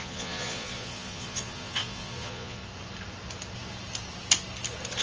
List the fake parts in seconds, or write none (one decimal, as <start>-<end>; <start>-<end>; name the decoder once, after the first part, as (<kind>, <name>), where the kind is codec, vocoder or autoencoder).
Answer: 0.0-2.6 (vocoder, Vocos)